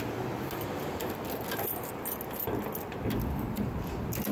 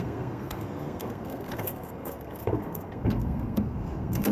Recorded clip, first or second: first